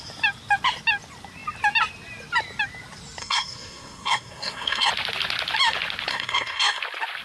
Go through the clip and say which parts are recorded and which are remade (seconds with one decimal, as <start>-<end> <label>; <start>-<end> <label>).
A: 0.0-3.2 recorded; 3.2-4.9 remade; 4.9-6.1 recorded; 6.1-6.8 remade; 6.8-7.2 recorded